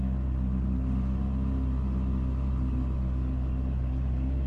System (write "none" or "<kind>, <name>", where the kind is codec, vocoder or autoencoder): none